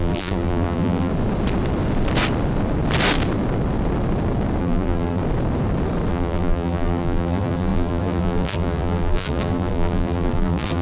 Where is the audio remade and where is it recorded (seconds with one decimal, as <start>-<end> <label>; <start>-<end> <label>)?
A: 0.0-1.1 remade; 1.1-4.6 recorded; 4.6-5.2 remade; 5.2-6.1 recorded; 6.1-10.8 remade